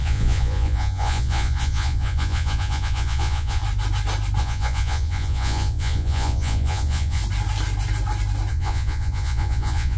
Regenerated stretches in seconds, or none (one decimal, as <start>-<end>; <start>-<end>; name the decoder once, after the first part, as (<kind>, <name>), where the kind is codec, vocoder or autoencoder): 0.0-3.6 (vocoder, Vocos); 4.4-7.2; 8.5-10.0